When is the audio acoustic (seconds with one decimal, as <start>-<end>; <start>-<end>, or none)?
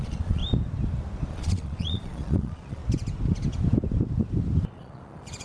0.4-1.3; 2.8-4.7